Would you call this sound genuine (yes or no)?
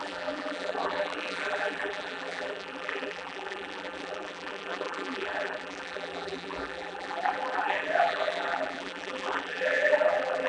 no